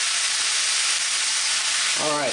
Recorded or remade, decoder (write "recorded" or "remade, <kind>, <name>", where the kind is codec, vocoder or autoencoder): recorded